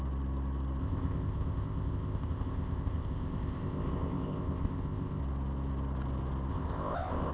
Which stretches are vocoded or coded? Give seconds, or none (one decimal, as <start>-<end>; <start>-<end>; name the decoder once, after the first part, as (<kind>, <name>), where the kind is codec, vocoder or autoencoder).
0.8-5.2 (codec, ZipCodec); 6.5-7.3